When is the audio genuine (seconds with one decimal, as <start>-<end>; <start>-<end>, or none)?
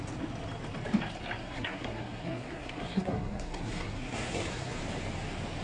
0.0-1.4; 4.8-5.6